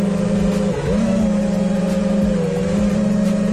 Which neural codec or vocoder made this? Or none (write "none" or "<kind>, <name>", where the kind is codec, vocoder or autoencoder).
none